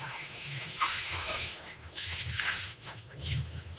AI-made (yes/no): yes